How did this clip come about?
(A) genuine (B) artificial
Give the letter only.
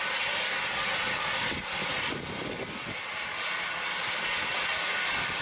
A